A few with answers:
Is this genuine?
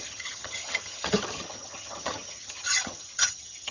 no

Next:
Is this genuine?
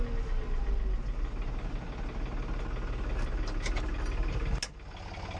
yes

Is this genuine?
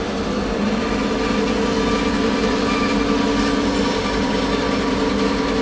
yes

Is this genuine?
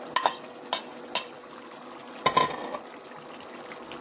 yes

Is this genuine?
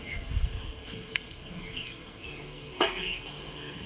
no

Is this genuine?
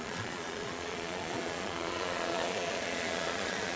no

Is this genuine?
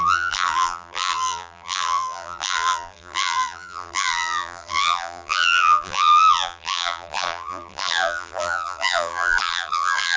no